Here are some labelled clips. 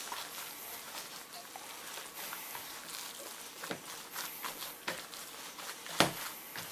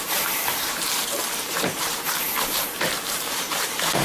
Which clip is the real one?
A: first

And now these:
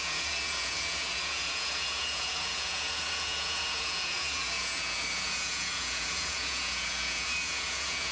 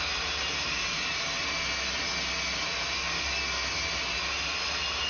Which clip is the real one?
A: second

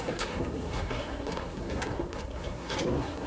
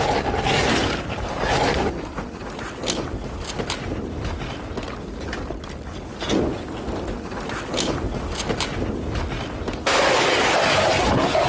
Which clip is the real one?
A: second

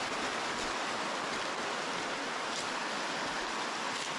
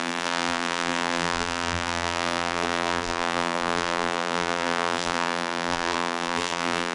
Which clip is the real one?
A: first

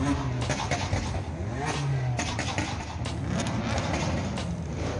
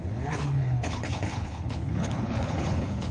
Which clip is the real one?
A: first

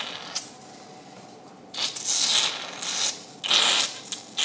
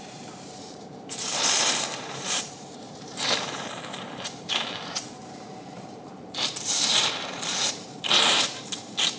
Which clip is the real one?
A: first